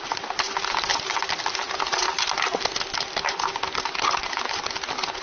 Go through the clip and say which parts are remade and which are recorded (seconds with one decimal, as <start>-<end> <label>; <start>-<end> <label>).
0.0-5.2 recorded